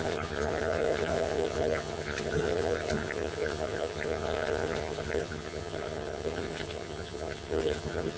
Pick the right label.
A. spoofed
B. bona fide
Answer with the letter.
A